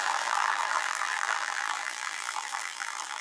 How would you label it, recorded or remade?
remade